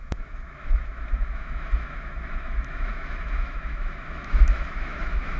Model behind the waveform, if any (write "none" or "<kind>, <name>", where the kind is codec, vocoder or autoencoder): autoencoder, DAC-VAE